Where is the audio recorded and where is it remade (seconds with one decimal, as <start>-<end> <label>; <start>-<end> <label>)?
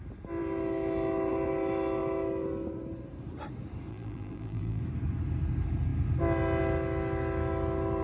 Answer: 0.0-3.9 recorded; 3.9-4.8 remade; 4.8-8.0 recorded